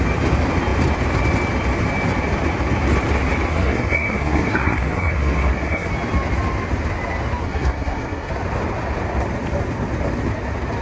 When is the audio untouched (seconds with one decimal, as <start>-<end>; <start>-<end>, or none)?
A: 0.0-3.5; 5.9-7.4; 8.3-10.8